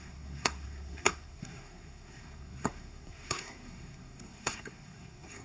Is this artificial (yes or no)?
yes